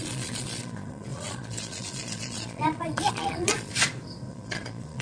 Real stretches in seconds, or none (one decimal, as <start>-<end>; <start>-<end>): 3.7-4.3

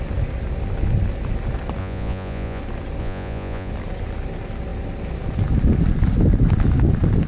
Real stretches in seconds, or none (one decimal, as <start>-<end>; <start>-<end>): 0.0-1.8; 2.6-3.0; 3.7-7.3